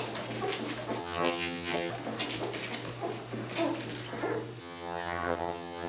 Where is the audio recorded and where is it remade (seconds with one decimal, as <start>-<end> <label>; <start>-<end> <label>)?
0.0-1.0 recorded; 1.0-1.9 remade; 1.9-4.6 recorded; 4.6-5.9 remade